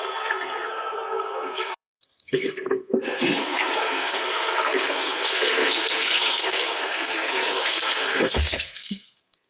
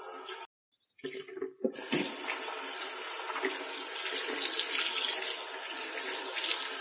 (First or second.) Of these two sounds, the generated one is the first